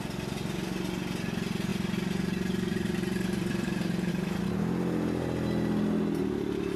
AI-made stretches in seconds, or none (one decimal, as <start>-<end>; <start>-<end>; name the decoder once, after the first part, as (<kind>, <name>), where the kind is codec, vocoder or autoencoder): 1.7-4.1 (vocoder, BigVGAN v2)